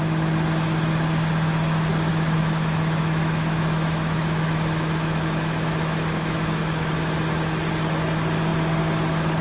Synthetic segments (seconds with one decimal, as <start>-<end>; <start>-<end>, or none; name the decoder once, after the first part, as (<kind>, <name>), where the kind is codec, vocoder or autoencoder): 2.1-6.9 (autoencoder, DAC-VAE)